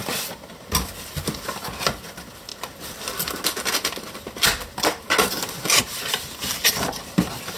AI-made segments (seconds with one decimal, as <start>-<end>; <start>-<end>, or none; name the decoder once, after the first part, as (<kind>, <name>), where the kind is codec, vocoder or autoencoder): none